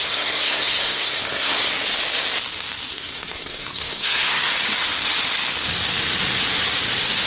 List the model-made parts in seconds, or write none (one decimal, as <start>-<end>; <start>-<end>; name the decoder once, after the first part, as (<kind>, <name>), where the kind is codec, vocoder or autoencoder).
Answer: 0.0-1.7 (codec, SNAC); 2.9-4.5